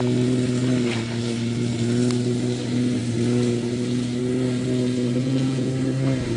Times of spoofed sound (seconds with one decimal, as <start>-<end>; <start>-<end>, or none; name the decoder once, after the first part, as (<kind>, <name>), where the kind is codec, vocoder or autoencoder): 5.2-5.7 (vocoder, Vocos)

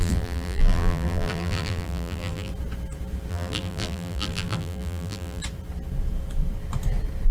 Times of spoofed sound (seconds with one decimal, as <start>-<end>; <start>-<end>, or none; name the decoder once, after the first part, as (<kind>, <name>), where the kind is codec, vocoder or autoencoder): 0.0-2.5 (vocoder, BigVGAN v2); 3.3-5.4

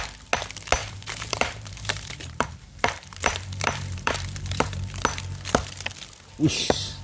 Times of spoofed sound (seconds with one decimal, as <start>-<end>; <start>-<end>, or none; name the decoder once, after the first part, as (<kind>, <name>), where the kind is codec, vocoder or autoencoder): 0.8-5.0 (vocoder, BigVGAN v2)

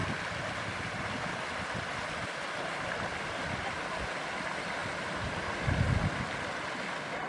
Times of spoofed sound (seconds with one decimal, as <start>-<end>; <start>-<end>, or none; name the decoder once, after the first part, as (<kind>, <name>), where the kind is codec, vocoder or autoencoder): none

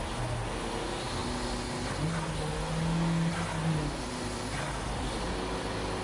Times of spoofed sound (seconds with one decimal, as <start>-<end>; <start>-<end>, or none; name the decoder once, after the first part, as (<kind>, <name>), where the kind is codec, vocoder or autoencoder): none

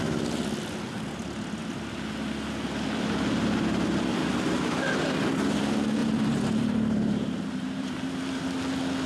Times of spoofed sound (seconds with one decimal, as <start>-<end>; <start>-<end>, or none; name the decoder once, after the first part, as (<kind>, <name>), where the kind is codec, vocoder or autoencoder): 6.0-8.0 (vocoder, BigVGAN v2)

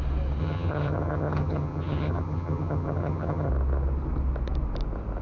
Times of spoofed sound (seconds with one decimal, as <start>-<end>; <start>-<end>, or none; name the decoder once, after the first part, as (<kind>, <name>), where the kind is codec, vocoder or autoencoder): 0.4-3.5 (vocoder, HiFi-GAN)